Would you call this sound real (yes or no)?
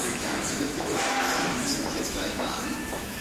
no